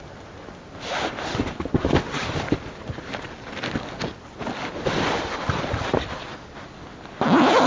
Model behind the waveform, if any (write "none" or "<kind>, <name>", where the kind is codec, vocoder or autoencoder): none